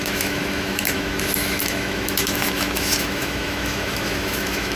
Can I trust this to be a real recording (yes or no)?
no